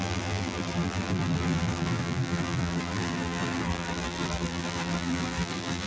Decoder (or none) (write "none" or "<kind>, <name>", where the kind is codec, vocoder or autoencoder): vocoder, BigVGAN v2